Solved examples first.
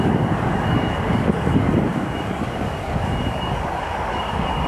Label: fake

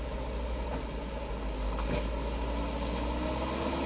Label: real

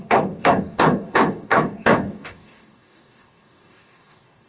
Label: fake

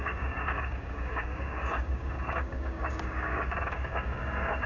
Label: fake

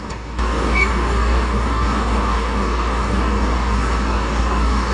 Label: fake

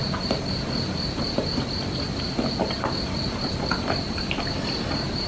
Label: real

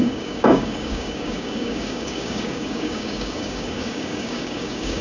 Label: fake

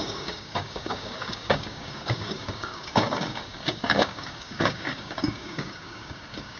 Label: fake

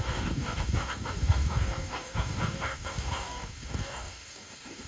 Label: fake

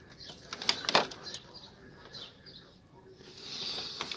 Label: real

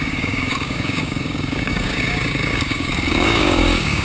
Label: fake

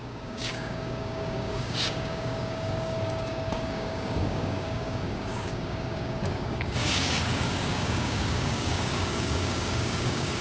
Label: fake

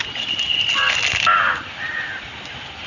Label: real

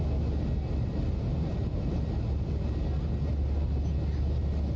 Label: real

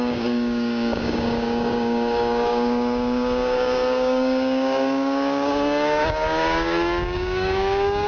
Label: fake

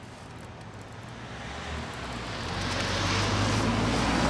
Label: real